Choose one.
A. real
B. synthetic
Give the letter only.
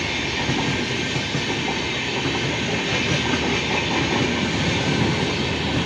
A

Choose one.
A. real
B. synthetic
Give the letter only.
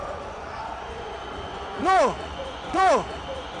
B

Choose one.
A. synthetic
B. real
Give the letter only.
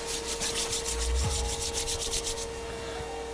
B